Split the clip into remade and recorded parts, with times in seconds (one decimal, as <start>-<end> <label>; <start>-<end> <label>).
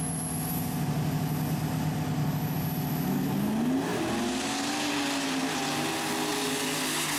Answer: 0.0-7.2 recorded